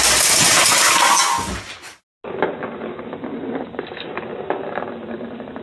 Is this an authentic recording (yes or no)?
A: yes